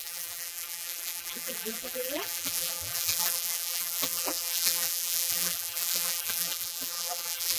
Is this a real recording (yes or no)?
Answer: no